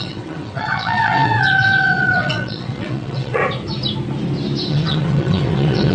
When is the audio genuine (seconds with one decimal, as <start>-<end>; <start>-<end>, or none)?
3.4-4.7